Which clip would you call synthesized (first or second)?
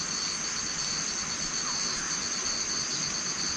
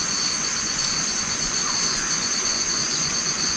second